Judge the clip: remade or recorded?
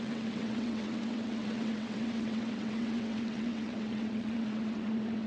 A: remade